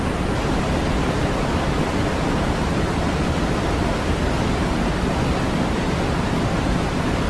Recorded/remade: recorded